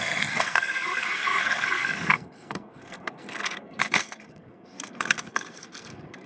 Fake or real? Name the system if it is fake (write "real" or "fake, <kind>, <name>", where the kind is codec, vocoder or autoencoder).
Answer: fake, codec, SNAC